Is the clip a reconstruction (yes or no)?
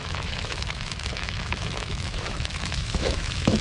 yes